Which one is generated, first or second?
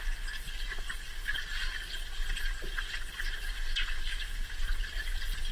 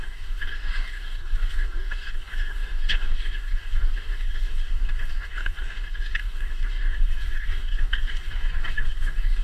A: second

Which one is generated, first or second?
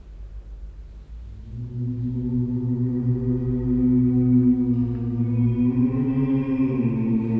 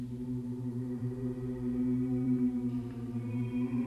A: second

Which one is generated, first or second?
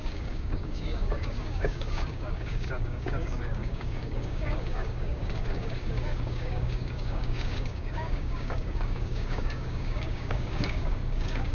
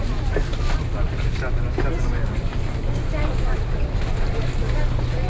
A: first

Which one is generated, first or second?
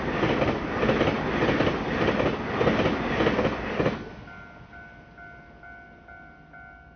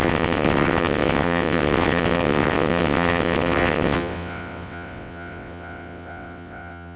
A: second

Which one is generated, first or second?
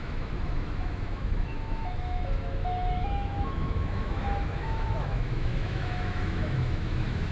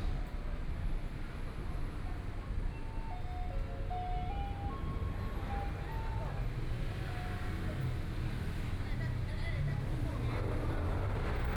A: first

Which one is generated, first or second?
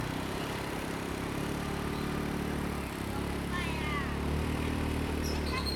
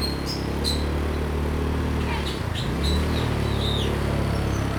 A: first